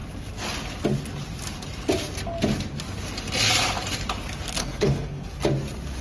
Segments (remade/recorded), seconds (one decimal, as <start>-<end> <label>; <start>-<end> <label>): 0.0-4.6 recorded; 4.6-5.4 remade; 5.4-6.0 recorded